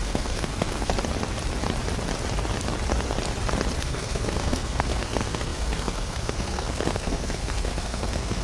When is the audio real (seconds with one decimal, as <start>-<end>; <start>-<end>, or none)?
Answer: 0.9-3.8